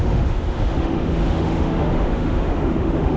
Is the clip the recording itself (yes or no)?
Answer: no